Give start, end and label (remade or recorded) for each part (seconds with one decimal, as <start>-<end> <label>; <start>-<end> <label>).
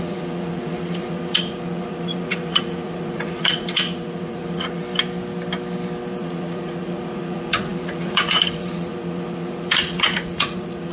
0.0-4.8 remade; 4.8-6.2 recorded; 6.2-10.9 remade